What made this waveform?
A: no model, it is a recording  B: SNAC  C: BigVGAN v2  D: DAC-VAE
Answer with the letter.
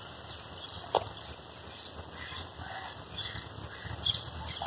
A